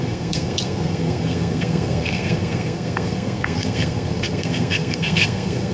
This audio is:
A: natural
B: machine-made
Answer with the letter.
B